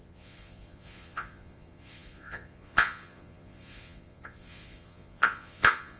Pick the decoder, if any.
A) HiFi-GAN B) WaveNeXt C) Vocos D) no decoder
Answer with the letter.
C